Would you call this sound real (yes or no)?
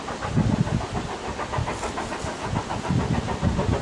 no